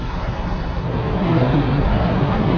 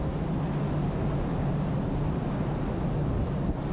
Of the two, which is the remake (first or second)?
first